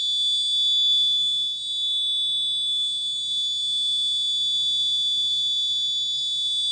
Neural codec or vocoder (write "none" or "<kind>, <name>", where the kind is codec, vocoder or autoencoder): none